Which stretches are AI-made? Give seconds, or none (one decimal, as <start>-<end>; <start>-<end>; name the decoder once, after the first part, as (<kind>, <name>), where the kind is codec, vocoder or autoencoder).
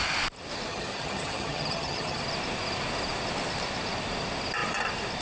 0.7-2.2 (vocoder, HiFi-GAN)